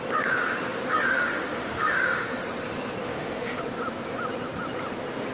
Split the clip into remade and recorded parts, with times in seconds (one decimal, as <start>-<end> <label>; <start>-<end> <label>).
0.0-1.1 recorded; 1.1-2.4 remade; 2.4-3.0 recorded; 3.0-3.6 remade; 3.6-5.3 recorded